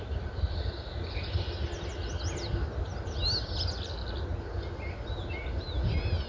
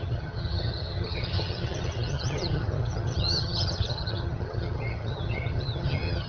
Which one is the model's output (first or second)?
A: second